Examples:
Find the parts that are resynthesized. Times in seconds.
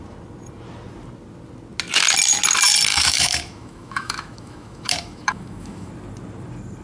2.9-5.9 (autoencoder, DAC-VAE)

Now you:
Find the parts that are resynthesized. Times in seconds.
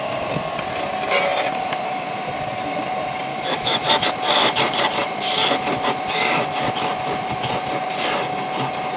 3.3-4.1 (autoencoder, DAC-VAE)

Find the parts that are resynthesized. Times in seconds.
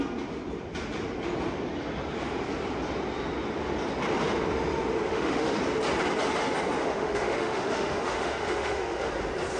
5.1-5.6 (autoencoder, DAC-VAE); 6.8-9.1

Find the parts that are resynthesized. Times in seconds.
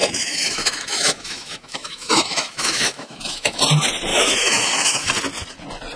0.0-3.6 (autoencoder, DAC-VAE); 4.1-5.1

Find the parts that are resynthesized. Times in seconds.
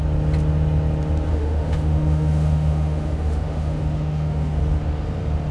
1.3-4.6 (autoencoder, DAC-VAE)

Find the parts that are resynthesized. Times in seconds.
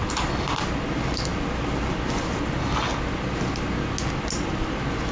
none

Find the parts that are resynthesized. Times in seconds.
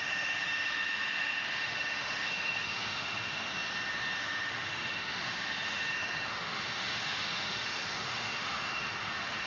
0.0-3.5 (autoencoder, DAC-VAE); 4.2-9.5